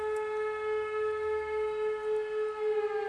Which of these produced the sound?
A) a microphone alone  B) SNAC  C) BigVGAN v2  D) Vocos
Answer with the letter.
A